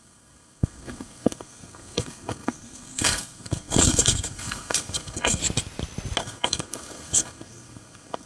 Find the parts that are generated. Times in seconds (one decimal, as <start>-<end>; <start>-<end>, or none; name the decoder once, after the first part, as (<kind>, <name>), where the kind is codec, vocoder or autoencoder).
0.0-5.4 (codec, SNAC); 6.2-8.3